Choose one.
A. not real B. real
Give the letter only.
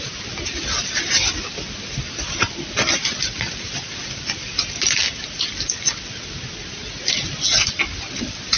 B